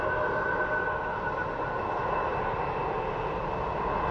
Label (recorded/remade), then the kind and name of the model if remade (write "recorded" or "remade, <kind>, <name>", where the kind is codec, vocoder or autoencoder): recorded